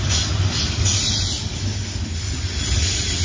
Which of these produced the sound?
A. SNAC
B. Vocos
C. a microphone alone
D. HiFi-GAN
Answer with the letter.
C